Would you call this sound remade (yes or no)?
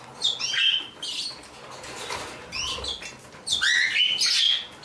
no